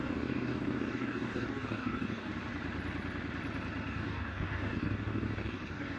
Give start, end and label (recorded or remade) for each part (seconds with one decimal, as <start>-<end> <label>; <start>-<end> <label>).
0.0-2.3 remade; 2.3-3.9 recorded; 3.9-6.0 remade